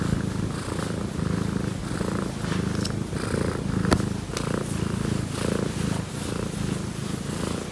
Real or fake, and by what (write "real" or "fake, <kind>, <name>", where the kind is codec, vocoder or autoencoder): real